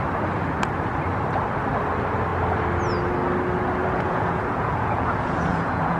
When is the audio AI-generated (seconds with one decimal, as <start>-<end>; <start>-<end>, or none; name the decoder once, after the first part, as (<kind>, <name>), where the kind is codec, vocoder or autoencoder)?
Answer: 3.8-6.0 (vocoder, Vocos)